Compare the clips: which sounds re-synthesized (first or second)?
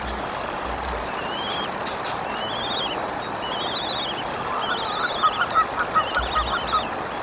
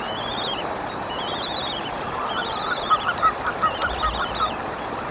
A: second